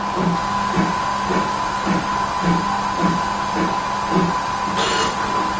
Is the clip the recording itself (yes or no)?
yes